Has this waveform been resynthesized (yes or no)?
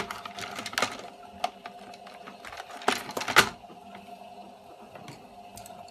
no